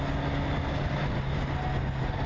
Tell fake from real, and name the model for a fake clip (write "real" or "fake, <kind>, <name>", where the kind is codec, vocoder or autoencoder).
real